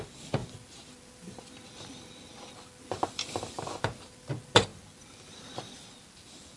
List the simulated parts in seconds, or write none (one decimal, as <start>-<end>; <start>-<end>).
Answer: none